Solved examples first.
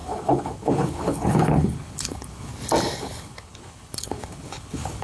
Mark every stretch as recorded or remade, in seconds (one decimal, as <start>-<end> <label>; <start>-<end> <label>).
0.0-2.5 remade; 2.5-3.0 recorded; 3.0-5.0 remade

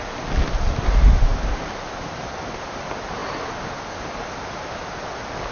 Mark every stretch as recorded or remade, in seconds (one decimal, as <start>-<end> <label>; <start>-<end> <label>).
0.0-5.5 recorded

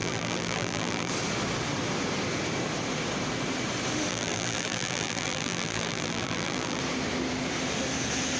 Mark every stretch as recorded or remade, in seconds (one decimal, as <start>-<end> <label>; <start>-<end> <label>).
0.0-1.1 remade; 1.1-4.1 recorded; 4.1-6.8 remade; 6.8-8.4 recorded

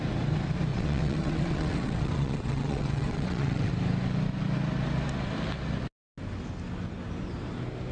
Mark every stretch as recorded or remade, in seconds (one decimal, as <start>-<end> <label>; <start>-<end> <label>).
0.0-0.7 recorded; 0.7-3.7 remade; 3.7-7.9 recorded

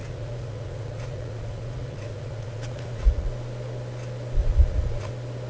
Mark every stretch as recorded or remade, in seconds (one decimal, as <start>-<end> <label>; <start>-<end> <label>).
0.0-3.3 remade; 3.3-4.4 recorded; 4.4-5.1 remade; 5.1-5.5 recorded

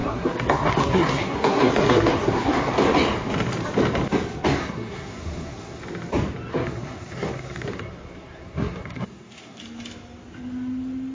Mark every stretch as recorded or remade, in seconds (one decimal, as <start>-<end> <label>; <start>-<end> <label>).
0.0-2.7 remade; 2.7-4.6 recorded; 4.6-5.8 remade; 5.8-6.5 recorded; 6.5-9.6 remade; 9.6-11.1 recorded

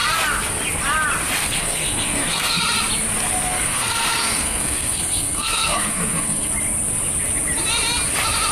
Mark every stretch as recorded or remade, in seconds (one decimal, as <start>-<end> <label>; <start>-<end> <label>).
0.0-1.4 recorded; 1.4-2.6 remade; 2.6-3.5 recorded; 3.5-6.5 remade; 6.5-8.5 recorded

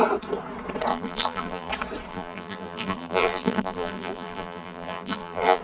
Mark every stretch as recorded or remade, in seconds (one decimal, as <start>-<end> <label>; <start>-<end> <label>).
0.0-0.9 recorded; 0.9-1.7 remade; 1.7-2.1 recorded; 2.1-5.6 remade